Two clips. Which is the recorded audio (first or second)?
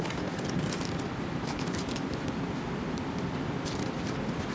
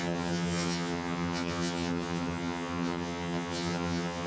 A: first